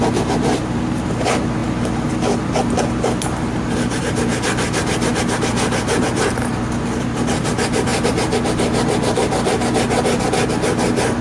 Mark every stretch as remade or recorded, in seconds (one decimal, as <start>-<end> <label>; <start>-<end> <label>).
0.0-11.2 recorded